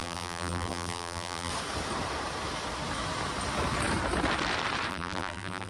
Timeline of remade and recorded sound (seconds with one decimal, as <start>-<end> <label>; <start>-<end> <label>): 0.0-1.5 remade; 1.5-4.9 recorded; 4.9-5.7 remade